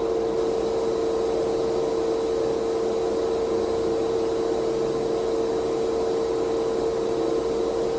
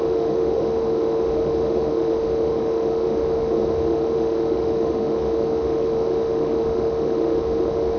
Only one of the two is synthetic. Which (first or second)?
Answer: second